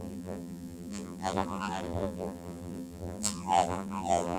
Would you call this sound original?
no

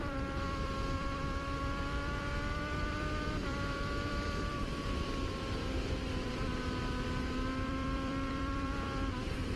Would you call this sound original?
no